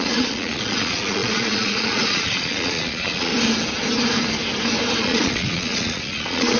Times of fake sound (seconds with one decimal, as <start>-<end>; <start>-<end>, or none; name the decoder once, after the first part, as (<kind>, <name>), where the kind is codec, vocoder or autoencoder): 0.0-3.3 (vocoder, Vocos); 5.0-6.6